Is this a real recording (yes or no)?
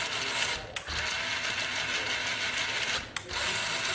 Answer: yes